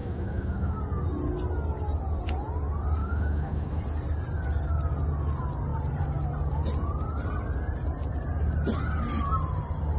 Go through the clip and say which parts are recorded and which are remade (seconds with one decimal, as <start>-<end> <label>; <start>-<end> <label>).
0.0-0.8 remade; 0.8-3.0 recorded; 3.0-3.8 remade; 3.8-10.0 recorded